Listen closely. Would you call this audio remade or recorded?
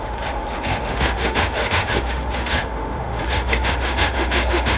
remade